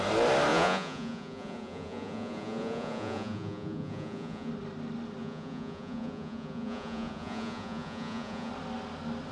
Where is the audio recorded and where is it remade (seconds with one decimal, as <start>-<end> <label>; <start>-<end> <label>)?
0.0-0.5 recorded; 0.5-4.5 remade; 4.5-5.2 recorded; 5.2-8.5 remade; 8.5-9.3 recorded